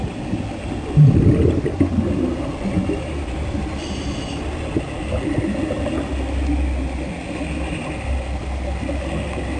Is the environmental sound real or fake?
real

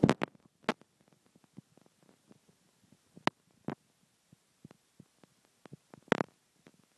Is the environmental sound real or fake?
real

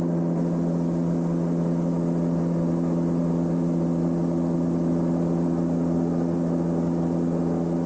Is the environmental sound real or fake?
real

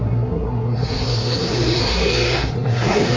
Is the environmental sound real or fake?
fake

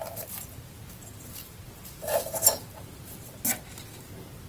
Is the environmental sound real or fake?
real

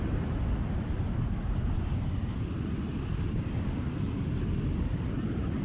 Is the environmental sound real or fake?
real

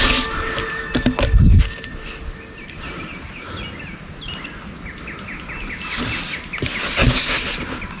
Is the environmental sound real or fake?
real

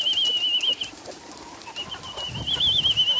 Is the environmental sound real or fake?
real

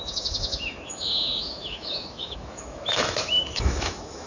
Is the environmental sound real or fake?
fake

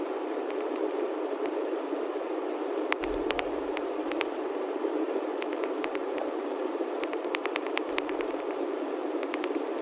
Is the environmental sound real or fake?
fake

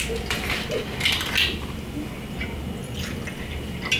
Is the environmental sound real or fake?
real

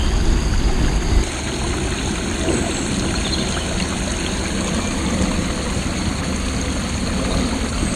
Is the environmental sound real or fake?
real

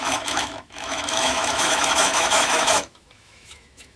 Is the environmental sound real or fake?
fake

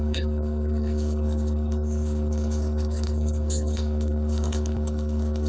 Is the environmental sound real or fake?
fake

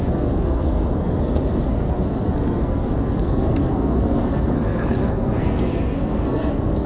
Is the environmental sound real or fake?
fake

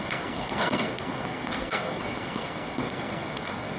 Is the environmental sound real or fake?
fake